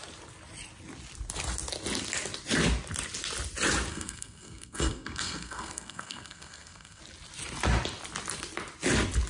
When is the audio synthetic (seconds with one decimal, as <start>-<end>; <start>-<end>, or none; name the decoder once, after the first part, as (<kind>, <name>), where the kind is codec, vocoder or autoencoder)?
3.9-7.0 (codec, SNAC)